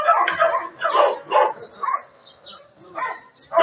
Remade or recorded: recorded